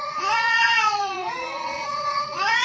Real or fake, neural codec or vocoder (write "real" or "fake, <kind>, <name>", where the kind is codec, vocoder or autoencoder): fake, vocoder, Vocos